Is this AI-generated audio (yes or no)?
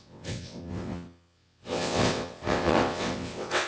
yes